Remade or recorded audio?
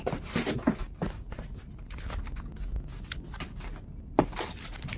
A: recorded